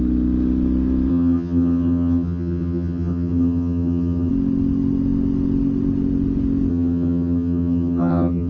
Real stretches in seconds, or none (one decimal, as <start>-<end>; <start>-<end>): 0.0-1.1; 4.3-6.7